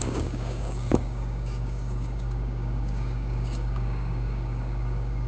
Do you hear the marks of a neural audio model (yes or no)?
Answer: yes